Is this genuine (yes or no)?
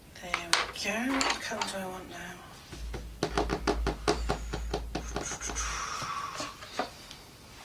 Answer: yes